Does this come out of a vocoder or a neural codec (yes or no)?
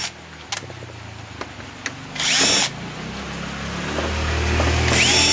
no